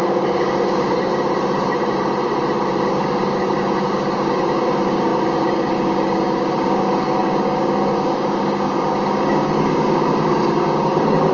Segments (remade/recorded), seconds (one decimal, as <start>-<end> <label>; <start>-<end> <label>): 0.0-1.1 remade; 1.1-2.9 recorded; 2.9-11.3 remade